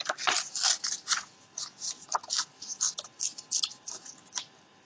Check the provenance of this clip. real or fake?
real